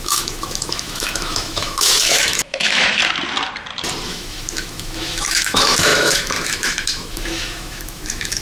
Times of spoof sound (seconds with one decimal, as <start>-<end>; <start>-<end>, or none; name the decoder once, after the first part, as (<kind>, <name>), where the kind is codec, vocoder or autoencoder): 0.0-3.0 (autoencoder, DAC-VAE); 4.1-8.4